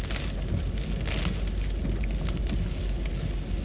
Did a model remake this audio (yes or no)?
no